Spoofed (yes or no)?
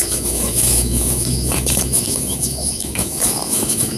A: yes